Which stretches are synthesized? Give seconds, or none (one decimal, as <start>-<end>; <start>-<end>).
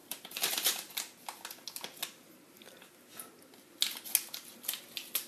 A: 0.0-0.9